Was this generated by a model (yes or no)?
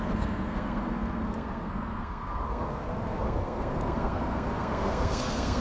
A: yes